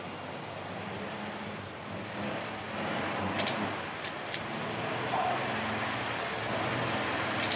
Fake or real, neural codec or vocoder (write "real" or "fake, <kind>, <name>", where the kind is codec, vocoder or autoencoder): real